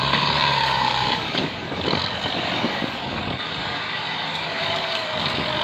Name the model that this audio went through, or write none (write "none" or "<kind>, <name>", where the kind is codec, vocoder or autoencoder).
codec, DAC